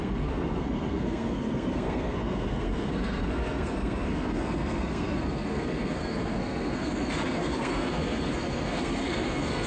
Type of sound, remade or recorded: remade